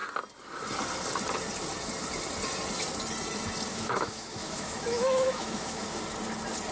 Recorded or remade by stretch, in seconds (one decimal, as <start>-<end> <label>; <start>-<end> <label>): 0.0-3.7 recorded; 3.7-6.0 remade; 6.0-6.7 recorded